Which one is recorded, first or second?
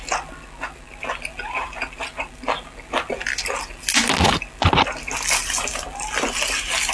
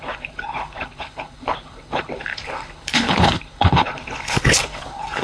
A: first